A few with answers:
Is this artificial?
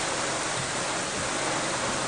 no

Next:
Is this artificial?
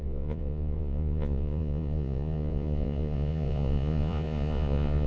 yes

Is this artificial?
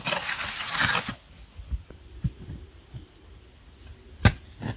no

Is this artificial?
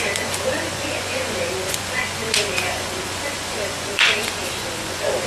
yes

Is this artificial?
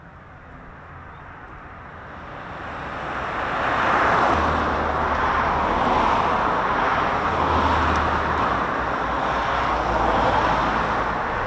no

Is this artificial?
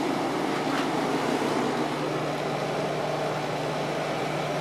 no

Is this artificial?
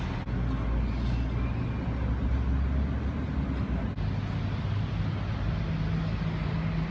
no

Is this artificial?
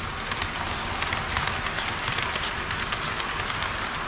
no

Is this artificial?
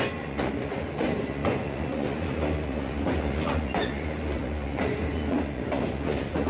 yes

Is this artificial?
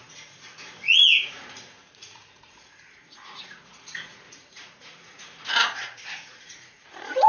yes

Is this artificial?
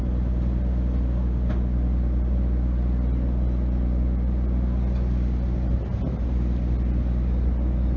no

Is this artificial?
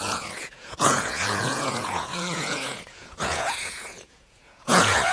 yes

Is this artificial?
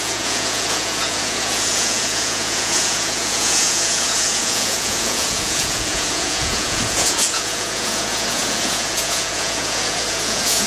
yes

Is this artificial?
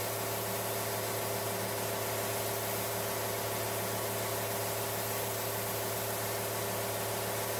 no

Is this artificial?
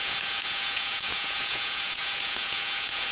yes